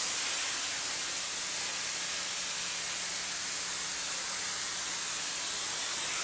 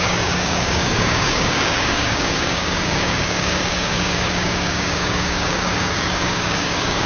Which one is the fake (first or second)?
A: second